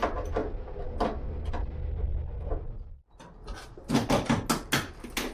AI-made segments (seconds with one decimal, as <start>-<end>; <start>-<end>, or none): none